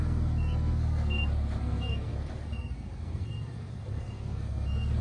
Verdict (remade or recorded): remade